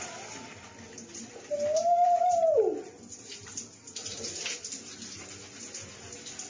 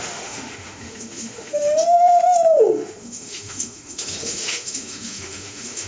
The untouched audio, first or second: first